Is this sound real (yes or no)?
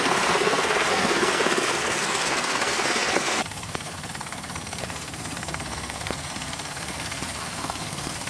no